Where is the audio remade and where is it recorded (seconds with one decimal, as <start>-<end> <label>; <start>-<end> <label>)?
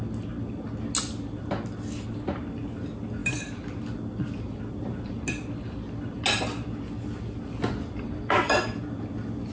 0.0-9.5 recorded